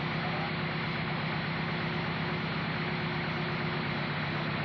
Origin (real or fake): real